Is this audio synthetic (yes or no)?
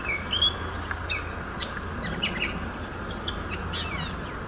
no